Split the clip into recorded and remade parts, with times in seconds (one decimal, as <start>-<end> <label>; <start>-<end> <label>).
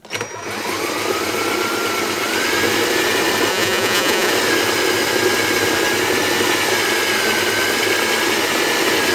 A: 0.0-3.5 recorded; 3.5-4.3 remade; 4.3-9.1 recorded